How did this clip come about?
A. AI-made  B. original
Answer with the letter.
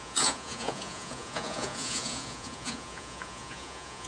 A